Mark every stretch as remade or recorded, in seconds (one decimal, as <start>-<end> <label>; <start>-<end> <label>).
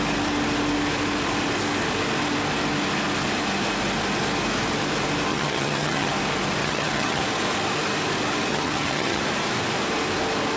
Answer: 0.0-5.3 recorded; 5.3-6.1 remade; 6.1-6.6 recorded; 6.6-7.2 remade; 7.2-8.5 recorded; 8.5-9.2 remade; 9.2-10.6 recorded